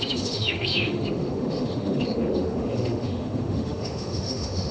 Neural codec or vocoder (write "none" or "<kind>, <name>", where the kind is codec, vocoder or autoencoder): autoencoder, DAC-VAE